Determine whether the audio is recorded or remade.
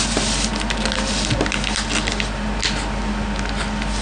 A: recorded